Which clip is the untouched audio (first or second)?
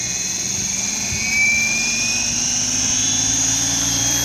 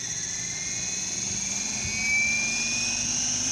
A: second